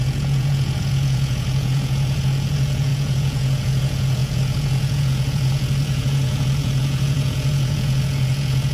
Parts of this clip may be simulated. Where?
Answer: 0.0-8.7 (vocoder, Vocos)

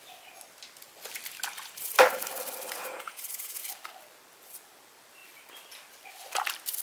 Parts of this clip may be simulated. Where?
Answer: 2.8-3.6 (vocoder, Vocos)

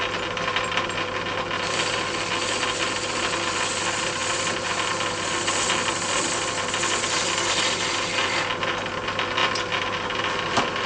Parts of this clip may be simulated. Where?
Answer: none

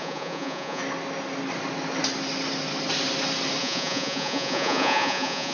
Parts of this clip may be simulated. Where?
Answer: 0.0-0.8 (vocoder, Vocos); 3.6-5.5

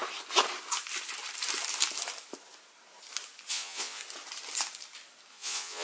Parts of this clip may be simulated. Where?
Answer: 3.5-4.0 (vocoder, Vocos); 5.3-5.8

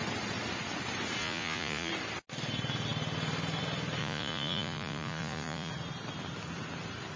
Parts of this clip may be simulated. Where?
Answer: 1.2-1.9 (vocoder, Vocos); 4.0-5.7